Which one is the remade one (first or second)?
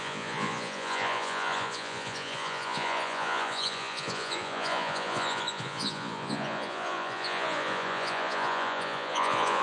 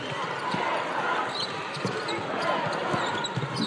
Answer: first